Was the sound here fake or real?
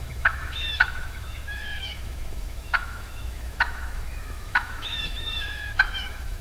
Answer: fake